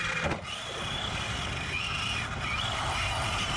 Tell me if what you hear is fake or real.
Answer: real